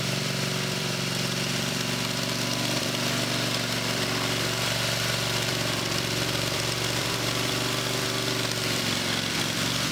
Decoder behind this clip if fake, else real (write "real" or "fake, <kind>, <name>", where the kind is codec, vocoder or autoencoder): fake, vocoder, BigVGAN v2